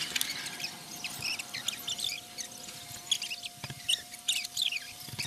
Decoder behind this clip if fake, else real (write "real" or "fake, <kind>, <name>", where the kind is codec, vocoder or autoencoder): real